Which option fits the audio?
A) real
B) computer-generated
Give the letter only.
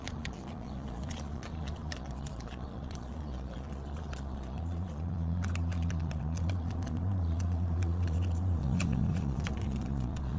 B